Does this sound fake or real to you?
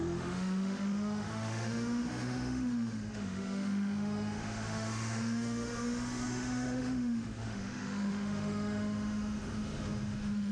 fake